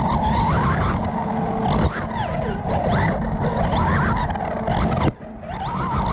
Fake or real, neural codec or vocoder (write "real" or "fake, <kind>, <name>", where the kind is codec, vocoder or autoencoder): real